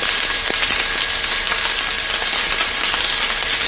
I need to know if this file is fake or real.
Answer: real